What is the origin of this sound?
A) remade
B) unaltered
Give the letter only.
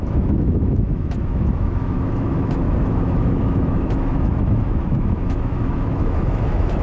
A